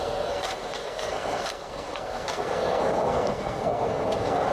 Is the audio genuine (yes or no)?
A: no